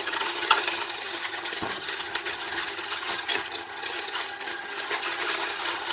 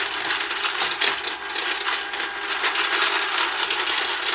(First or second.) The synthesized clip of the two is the first